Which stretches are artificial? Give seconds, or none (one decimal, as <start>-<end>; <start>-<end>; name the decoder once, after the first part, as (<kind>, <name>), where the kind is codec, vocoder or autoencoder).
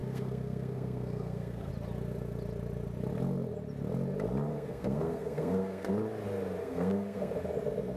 0.0-1.7 (codec, SNAC); 4.5-5.9; 6.6-7.3